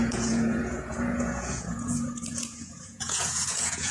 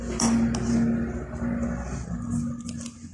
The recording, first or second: second